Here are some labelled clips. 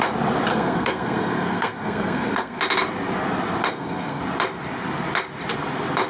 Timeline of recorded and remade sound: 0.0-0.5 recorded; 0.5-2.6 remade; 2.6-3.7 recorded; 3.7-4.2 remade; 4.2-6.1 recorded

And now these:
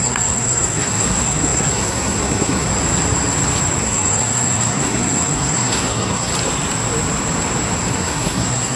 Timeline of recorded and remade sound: 0.0-2.7 remade; 2.7-3.8 recorded; 3.8-6.3 remade; 6.3-7.9 recorded; 7.9-8.8 remade

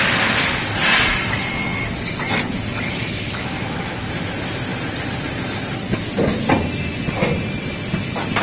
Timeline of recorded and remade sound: 0.0-8.4 recorded